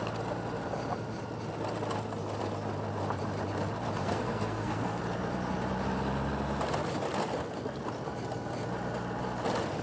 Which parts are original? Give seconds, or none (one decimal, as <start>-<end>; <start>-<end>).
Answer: 0.0-4.0; 5.0-9.8